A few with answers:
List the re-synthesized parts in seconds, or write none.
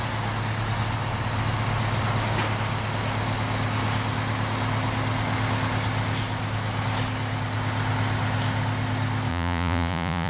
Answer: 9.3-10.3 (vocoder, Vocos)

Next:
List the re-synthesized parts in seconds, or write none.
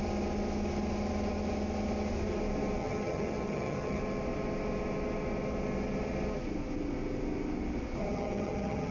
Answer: 2.8-4.0 (vocoder, HiFi-GAN); 8.1-8.9